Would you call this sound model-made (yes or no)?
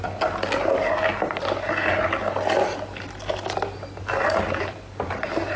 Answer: no